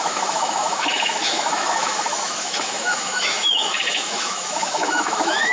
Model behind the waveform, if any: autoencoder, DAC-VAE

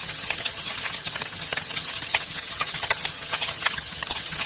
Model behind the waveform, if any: vocoder, HiFi-GAN